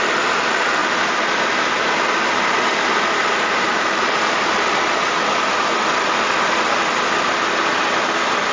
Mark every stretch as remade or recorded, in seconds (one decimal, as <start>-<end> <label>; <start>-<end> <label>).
0.0-0.8 recorded; 0.8-2.2 remade; 2.2-3.2 recorded; 3.2-7.6 remade; 7.6-8.5 recorded